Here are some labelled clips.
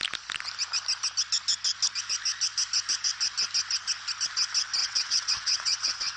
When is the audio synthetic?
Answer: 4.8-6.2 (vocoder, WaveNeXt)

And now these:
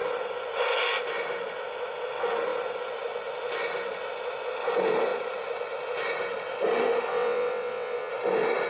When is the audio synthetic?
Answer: 7.1-8.1 (vocoder, WaveNeXt)